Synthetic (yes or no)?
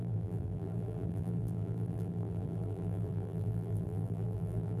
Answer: yes